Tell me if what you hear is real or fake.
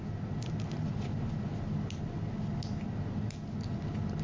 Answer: real